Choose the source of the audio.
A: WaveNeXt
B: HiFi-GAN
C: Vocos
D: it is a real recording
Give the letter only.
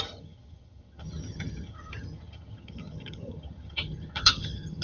B